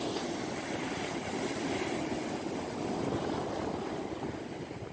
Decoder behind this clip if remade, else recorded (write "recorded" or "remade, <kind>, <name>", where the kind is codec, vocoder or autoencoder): recorded